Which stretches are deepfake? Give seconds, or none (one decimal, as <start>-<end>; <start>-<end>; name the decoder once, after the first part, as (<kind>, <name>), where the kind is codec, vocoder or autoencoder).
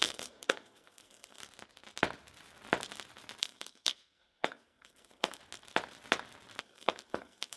0.0-1.4 (codec, SNAC); 3.4-5.4; 6.6-7.6